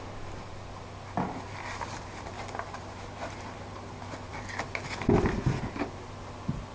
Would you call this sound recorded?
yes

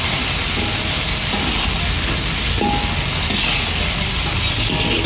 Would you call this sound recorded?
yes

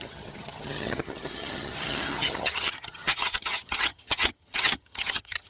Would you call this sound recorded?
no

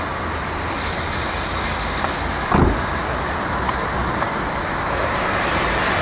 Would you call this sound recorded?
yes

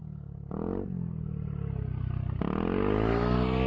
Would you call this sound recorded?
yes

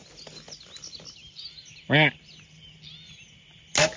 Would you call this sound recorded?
yes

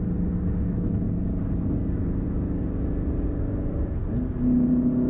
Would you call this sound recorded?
yes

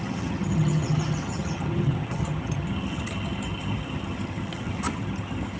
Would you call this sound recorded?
no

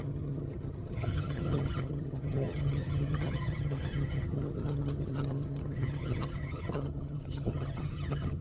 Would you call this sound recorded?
no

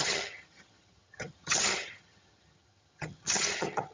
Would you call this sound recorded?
no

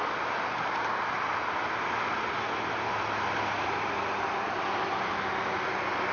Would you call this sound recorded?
yes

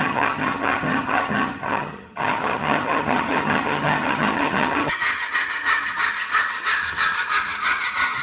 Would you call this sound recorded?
no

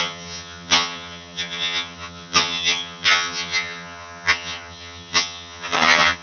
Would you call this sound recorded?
no